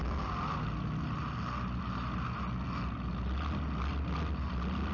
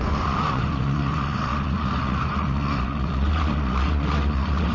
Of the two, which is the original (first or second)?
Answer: first